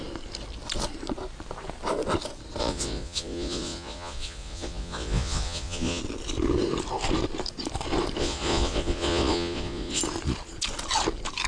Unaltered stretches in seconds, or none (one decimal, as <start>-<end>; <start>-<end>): 0.0-2.6; 6.0-8.2; 10.0-11.5